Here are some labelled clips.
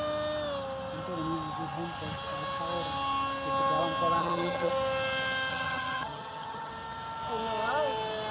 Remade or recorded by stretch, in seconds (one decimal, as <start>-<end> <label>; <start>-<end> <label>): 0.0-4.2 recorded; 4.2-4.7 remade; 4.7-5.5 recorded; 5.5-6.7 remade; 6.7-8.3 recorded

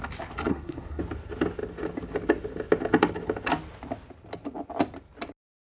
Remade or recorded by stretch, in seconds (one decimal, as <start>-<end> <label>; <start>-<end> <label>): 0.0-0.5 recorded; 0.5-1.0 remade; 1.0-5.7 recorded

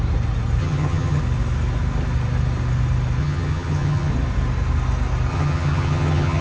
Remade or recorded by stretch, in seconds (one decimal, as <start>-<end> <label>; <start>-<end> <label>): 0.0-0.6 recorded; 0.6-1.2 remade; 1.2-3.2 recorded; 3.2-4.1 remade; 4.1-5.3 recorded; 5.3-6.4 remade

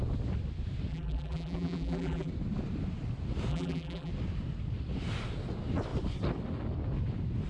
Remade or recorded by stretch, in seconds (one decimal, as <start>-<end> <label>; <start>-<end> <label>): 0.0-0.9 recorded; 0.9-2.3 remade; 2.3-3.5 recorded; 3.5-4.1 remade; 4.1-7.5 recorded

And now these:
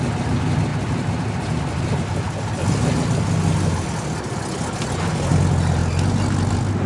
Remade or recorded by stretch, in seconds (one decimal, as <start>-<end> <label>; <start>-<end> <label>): 0.0-0.7 recorded; 0.7-1.5 remade; 1.5-6.9 recorded